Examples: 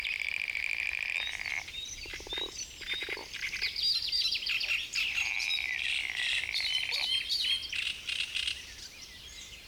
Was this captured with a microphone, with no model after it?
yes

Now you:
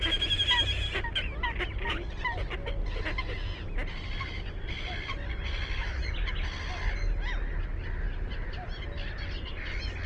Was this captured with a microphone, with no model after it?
yes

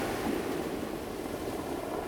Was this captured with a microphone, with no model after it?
yes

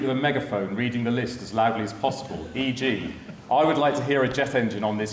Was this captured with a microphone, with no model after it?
yes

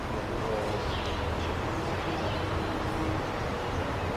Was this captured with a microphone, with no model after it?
yes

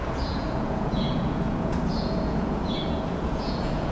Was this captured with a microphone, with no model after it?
no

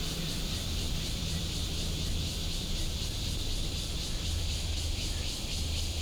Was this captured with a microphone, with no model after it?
no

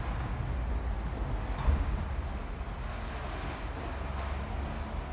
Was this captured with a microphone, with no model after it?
yes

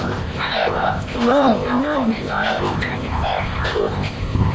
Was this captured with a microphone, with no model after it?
no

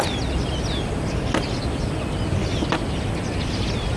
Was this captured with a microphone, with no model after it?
yes